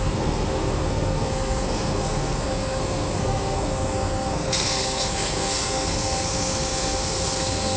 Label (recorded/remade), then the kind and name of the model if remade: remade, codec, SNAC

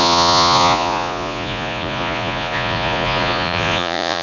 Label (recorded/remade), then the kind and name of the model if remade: remade, vocoder, Vocos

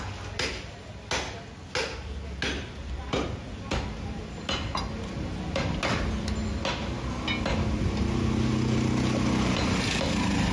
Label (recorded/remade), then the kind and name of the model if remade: recorded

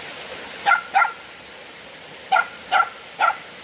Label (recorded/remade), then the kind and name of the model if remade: recorded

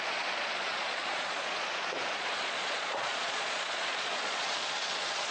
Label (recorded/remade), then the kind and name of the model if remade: remade, vocoder, Vocos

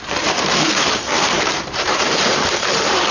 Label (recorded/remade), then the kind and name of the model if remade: remade, vocoder, BigVGAN v2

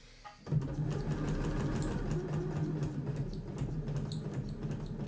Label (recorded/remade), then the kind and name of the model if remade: recorded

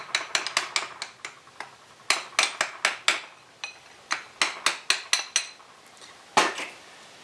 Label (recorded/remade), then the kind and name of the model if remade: recorded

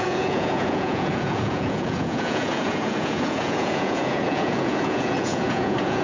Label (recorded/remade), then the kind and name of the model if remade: remade, vocoder, Vocos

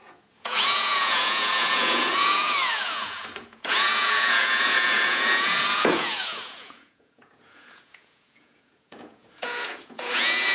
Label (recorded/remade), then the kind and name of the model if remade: remade, vocoder, Vocos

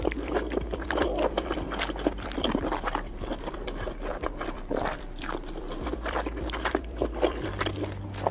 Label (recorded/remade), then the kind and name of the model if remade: remade, vocoder, BigVGAN v2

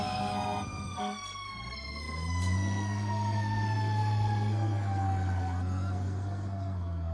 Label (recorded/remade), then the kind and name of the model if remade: remade, codec, SNAC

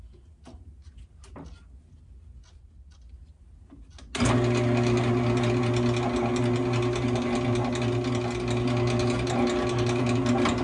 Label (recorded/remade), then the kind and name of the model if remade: recorded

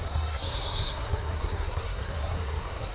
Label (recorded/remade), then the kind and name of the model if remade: remade, codec, SNAC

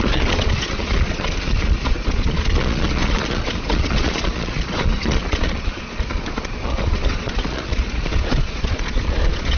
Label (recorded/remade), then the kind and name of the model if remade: remade, vocoder, Vocos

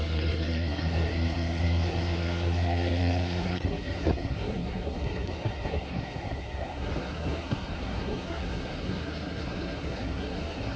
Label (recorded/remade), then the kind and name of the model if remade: remade, codec, SNAC